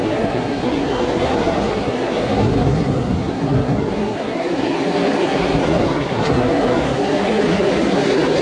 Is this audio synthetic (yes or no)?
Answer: yes